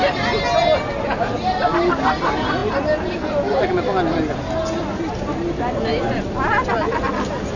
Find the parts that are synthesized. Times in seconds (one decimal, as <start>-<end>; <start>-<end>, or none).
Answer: none